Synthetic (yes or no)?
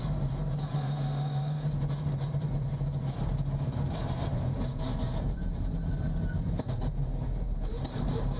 yes